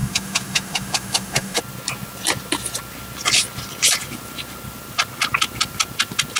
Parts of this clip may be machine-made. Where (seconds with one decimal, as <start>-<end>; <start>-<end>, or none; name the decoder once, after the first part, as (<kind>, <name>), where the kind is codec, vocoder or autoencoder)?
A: 0.0-1.6 (autoencoder, DAC-VAE)